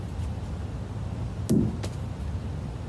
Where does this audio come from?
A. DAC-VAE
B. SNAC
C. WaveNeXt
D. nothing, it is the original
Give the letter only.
D